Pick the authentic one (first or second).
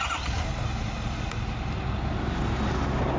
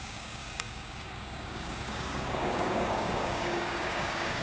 first